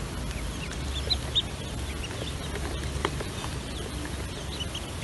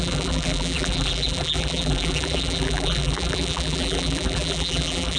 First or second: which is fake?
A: second